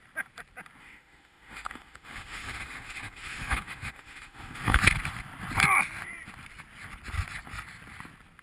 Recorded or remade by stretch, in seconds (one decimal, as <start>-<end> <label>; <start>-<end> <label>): 0.0-0.8 recorded; 0.8-4.8 remade; 4.8-8.4 recorded

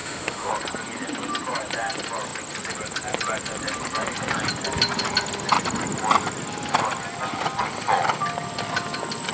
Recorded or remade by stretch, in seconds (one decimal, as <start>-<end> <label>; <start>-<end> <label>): 0.0-0.5 remade; 0.5-9.3 recorded